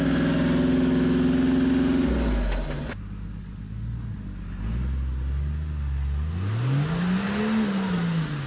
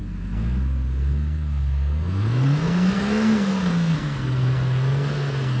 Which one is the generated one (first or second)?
second